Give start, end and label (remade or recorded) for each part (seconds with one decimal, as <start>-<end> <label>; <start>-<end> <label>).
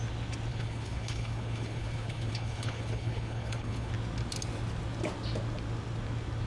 0.0-0.5 recorded; 0.5-3.9 remade; 3.9-6.5 recorded